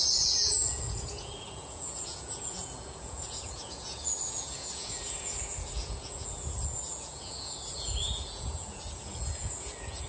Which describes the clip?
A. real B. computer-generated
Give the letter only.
B